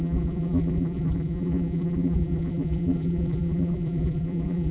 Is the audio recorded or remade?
remade